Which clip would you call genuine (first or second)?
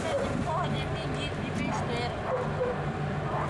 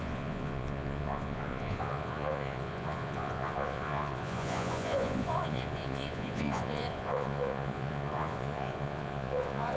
first